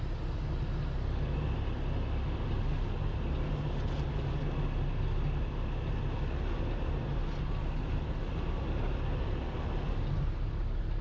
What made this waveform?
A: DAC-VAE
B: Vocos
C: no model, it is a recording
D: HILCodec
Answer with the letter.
C